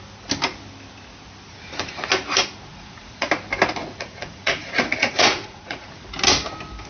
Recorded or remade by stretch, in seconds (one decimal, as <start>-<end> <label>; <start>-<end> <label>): 0.0-1.5 recorded; 1.5-2.1 remade; 2.1-2.7 recorded; 2.7-3.3 remade; 3.3-3.8 recorded; 3.8-6.0 remade; 6.0-6.9 recorded